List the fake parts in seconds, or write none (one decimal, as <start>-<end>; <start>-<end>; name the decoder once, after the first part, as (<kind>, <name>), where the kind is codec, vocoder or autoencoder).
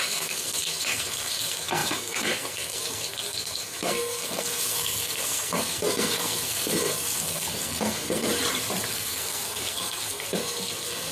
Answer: 0.0-8.3 (codec, SNAC); 8.9-11.1